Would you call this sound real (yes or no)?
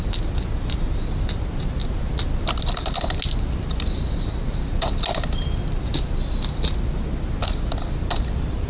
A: yes